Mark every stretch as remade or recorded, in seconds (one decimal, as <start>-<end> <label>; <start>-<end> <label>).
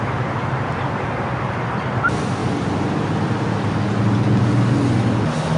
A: 0.0-5.6 recorded